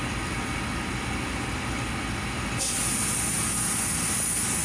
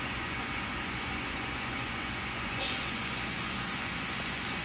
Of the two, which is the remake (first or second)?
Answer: second